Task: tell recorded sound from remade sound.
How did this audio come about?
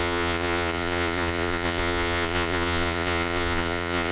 remade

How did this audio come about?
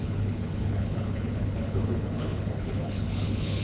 remade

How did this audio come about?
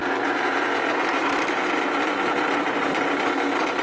recorded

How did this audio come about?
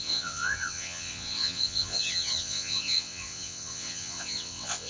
remade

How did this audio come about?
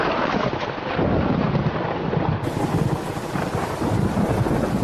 remade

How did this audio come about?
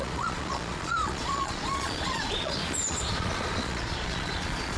remade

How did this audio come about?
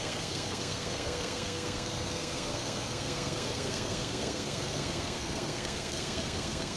remade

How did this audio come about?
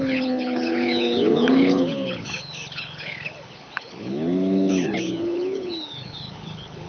remade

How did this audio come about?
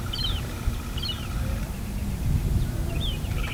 remade